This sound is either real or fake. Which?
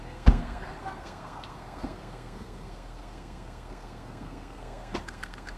fake